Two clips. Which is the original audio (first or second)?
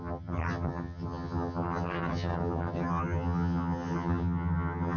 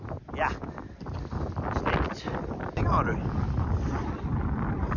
second